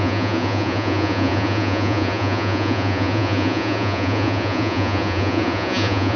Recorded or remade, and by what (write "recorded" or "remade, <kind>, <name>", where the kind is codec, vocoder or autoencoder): remade, vocoder, Vocos